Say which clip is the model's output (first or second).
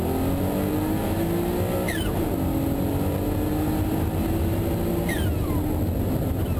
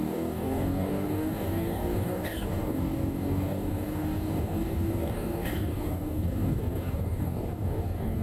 second